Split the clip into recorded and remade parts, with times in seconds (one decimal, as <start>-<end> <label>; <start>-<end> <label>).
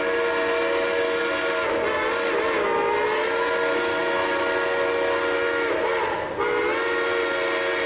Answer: 0.0-7.9 recorded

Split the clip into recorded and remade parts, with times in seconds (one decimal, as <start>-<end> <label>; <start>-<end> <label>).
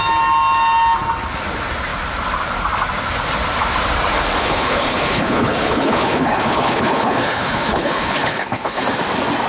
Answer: 0.0-4.4 recorded; 4.4-8.8 remade; 8.8-9.5 recorded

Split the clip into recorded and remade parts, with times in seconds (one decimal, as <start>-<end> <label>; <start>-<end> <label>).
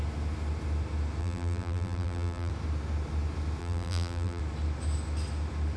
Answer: 0.0-1.2 recorded; 1.2-2.5 remade; 2.5-3.6 recorded; 3.6-4.4 remade; 4.4-5.8 recorded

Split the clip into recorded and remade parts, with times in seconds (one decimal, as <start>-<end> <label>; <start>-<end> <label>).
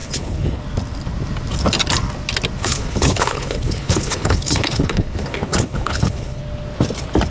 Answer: 0.0-0.6 remade; 0.6-2.6 recorded; 2.6-6.4 remade; 6.4-7.3 recorded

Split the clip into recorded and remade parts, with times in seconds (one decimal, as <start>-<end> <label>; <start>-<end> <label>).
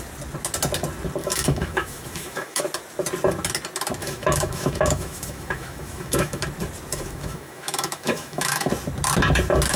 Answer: 0.0-1.2 recorded; 1.2-2.6 remade; 2.6-4.0 recorded; 4.0-6.4 remade; 6.4-6.9 recorded; 6.9-8.7 remade; 8.7-9.8 recorded